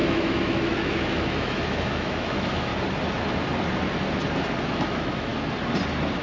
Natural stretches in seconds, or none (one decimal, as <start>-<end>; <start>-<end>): 2.7-4.7; 5.3-6.2